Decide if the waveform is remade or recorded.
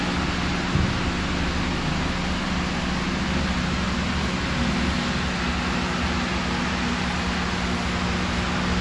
recorded